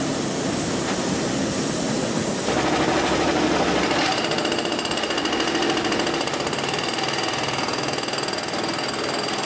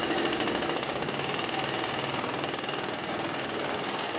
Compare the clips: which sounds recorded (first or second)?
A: first